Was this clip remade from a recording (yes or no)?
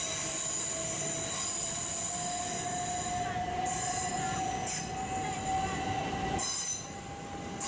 no